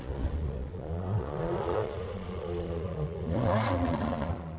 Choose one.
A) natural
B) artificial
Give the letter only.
B